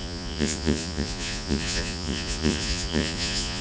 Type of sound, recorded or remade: remade